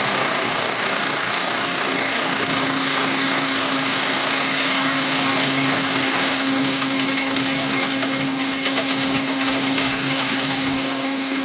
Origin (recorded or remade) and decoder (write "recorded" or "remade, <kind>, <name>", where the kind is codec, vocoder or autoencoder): remade, codec, DAC